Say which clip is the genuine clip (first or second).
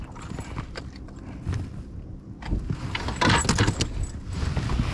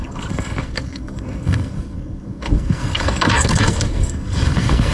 first